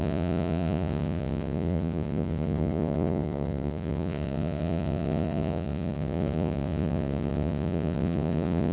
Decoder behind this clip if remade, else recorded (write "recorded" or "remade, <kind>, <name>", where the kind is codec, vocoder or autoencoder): remade, vocoder, Vocos